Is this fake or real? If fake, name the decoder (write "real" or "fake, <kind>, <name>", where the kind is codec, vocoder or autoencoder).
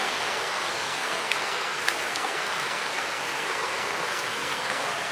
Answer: fake, codec, SNAC